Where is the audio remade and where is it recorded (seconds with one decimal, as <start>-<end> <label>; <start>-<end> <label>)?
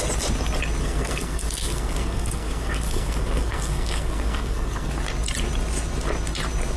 0.0-0.8 recorded; 0.8-4.9 remade; 4.9-6.8 recorded